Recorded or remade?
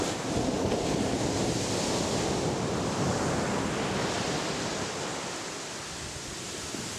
recorded